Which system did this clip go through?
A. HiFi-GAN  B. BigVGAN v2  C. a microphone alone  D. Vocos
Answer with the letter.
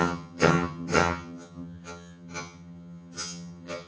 A